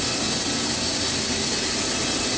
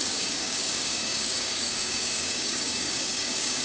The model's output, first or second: second